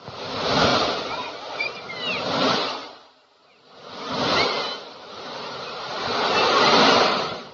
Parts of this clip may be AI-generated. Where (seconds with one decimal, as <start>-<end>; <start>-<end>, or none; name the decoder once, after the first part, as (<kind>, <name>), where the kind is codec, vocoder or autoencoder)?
0.0-3.4 (vocoder, BigVGAN v2); 5.0-7.5